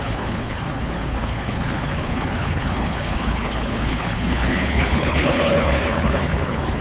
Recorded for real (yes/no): no